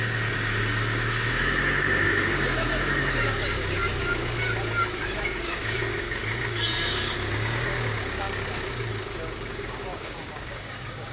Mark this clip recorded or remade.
remade